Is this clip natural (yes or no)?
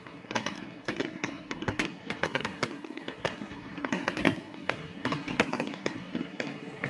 no